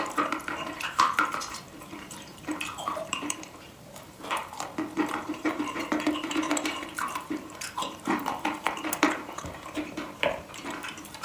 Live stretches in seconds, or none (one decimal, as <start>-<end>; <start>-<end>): 4.4-5.3